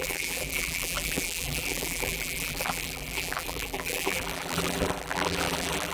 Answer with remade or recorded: remade